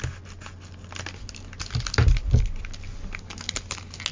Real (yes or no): yes